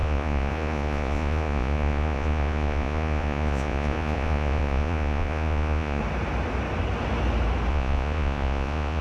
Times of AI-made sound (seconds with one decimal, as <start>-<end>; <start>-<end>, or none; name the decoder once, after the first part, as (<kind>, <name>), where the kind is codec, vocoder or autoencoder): 0.0-6.0 (vocoder, Vocos); 7.7-9.0